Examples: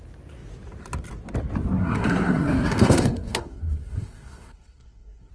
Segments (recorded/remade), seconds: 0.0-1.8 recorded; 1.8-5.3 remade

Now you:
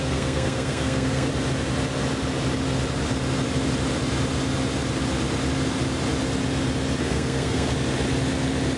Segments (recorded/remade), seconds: 0.0-1.3 remade; 1.3-7.0 recorded; 7.0-7.7 remade; 7.7-8.8 recorded

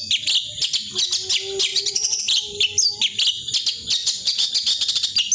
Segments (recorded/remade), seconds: 0.0-1.7 recorded; 1.7-2.2 remade; 2.2-4.0 recorded; 4.0-4.5 remade; 4.5-5.3 recorded